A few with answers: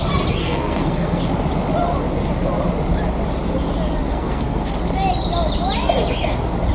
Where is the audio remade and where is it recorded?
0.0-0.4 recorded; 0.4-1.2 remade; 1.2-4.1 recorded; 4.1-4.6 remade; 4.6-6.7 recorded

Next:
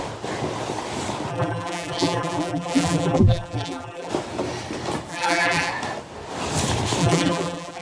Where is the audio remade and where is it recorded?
0.0-1.3 recorded; 1.3-4.1 remade; 4.1-5.1 recorded; 5.1-5.7 remade; 5.7-7.0 recorded; 7.0-7.8 remade

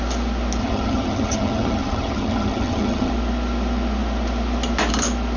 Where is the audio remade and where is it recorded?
0.0-0.6 recorded; 0.6-3.1 remade; 3.1-5.4 recorded

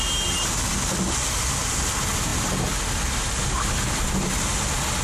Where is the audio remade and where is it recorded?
0.0-5.0 recorded

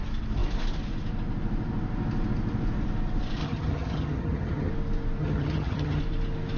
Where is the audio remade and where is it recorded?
0.0-3.4 recorded; 3.4-4.7 remade; 4.7-5.2 recorded; 5.2-6.0 remade; 6.0-6.6 recorded

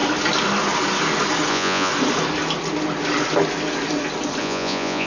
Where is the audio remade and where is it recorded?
0.0-1.5 recorded; 1.5-1.9 remade; 1.9-4.4 recorded; 4.4-5.1 remade